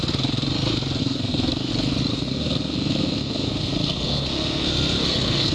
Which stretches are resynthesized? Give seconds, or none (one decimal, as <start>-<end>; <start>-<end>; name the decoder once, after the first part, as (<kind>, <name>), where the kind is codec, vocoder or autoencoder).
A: 1.0-1.7 (codec, SNAC); 2.1-5.5